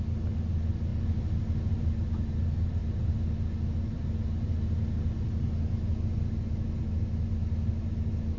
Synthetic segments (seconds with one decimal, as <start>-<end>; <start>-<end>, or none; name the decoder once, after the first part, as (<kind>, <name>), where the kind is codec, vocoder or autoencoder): none